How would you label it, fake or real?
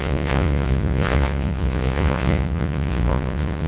fake